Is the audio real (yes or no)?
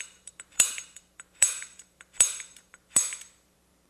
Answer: no